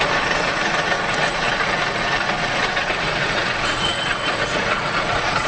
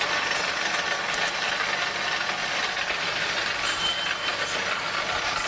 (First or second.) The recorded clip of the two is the second